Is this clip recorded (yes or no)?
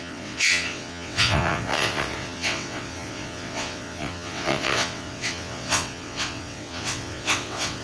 no